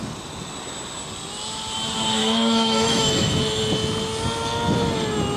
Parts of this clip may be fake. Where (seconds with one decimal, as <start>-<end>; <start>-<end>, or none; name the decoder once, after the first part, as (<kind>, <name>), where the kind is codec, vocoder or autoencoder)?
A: 2.2-3.4 (autoencoder, DAC-VAE)